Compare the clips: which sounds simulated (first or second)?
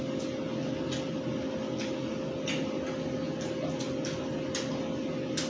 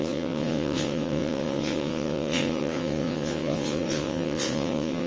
second